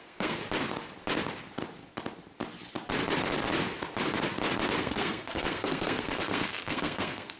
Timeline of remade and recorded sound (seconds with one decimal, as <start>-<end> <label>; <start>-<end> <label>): 0.0-0.4 remade; 0.4-4.8 recorded; 4.8-7.4 remade